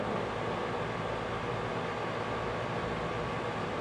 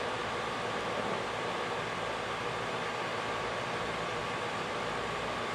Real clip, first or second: first